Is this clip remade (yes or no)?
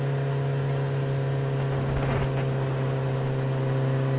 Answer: no